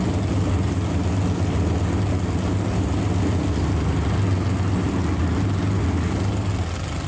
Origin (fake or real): real